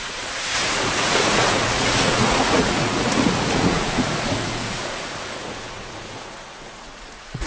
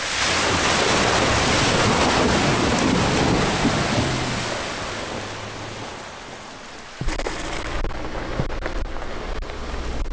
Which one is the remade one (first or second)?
first